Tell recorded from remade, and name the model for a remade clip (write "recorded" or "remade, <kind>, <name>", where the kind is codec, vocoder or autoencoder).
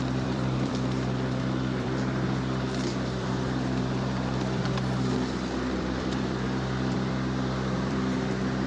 remade, vocoder, BigVGAN v2